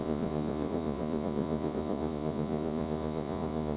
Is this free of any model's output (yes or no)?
no